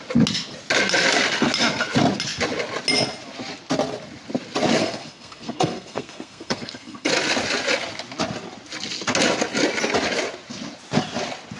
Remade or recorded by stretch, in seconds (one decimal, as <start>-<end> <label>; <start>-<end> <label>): 0.0-4.8 recorded; 4.8-7.1 remade; 7.1-11.6 recorded

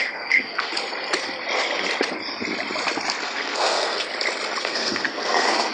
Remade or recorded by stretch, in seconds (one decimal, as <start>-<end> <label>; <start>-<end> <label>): 0.0-0.7 remade; 0.7-3.2 recorded; 3.2-4.1 remade; 4.1-4.6 recorded; 4.6-5.7 remade

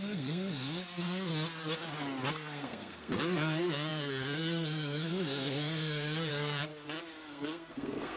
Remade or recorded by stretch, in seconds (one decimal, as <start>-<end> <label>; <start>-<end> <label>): 0.0-1.3 remade; 1.3-2.3 recorded; 2.3-6.7 remade; 6.7-7.3 recorded; 7.3-8.2 remade